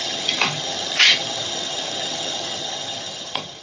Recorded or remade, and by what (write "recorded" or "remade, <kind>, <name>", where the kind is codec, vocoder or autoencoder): remade, vocoder, HiFi-GAN